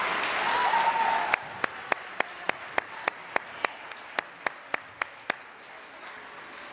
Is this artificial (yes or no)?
no